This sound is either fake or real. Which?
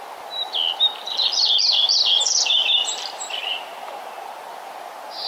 real